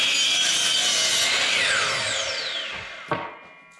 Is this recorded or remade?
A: recorded